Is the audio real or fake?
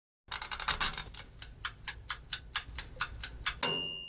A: real